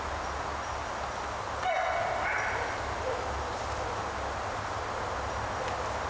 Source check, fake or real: real